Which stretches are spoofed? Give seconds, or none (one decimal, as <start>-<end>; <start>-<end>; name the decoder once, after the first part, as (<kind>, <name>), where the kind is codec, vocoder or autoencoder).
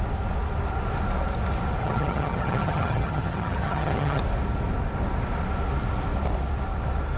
1.8-4.2 (vocoder, HiFi-GAN)